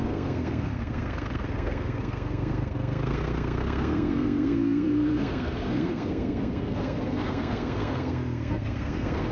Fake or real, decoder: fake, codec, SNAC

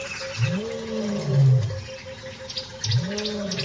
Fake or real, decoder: real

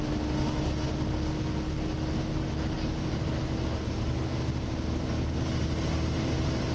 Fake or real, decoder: real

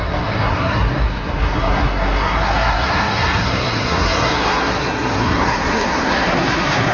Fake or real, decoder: fake, codec, SNAC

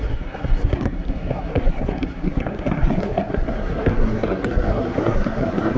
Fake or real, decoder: fake, codec, SNAC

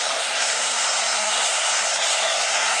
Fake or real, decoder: fake, codec, SNAC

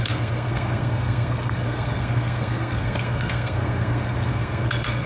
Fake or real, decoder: fake, codec, SNAC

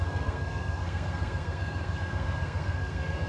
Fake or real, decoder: fake, codec, SNAC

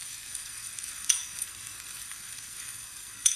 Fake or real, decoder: fake, codec, SNAC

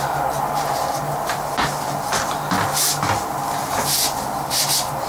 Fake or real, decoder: real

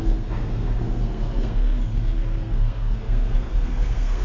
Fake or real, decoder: fake, codec, SNAC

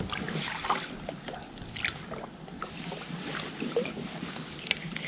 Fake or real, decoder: real